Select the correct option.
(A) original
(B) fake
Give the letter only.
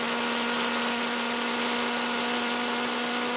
A